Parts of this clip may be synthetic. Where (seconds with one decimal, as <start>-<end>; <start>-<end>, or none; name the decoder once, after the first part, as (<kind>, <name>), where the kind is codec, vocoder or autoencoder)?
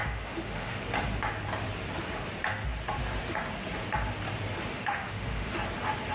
0.0-0.8 (autoencoder, DAC-VAE); 4.7-5.5